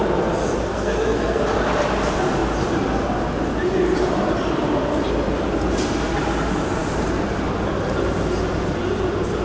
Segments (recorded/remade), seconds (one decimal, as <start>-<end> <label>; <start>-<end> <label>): 0.0-0.7 recorded; 0.7-1.4 remade; 1.4-9.4 recorded